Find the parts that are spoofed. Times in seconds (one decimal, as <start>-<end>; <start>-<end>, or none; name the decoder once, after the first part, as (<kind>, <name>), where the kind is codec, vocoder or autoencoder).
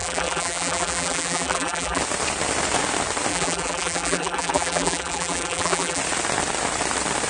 0.0-2.0 (vocoder, BigVGAN v2); 3.3-6.0